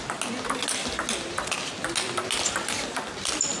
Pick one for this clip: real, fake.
real